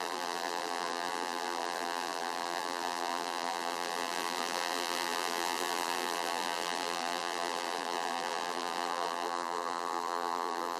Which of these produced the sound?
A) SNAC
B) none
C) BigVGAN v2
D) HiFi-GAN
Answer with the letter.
C